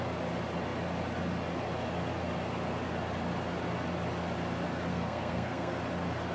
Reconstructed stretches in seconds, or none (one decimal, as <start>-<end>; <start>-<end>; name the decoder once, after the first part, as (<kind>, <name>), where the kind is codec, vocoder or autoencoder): 4.9-5.8 (codec, SNAC)